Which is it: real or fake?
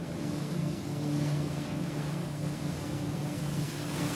fake